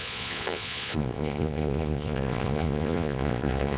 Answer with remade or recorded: remade